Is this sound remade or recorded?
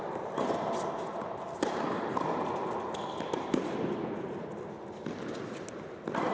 recorded